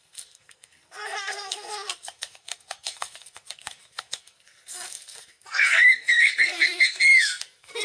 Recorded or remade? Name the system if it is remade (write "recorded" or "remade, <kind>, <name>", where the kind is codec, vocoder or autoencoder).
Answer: remade, codec, SNAC